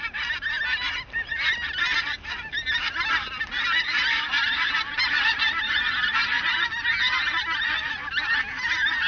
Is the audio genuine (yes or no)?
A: yes